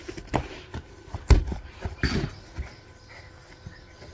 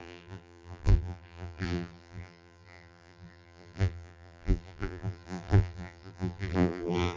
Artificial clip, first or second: second